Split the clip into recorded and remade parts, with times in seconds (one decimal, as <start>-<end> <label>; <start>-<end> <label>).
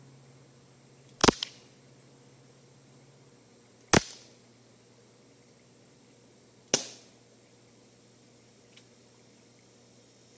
0.0-10.4 recorded